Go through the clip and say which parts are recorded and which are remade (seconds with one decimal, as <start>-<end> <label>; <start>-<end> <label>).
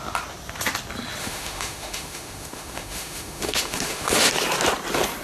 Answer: 0.0-1.2 recorded; 1.2-4.3 remade; 4.3-5.2 recorded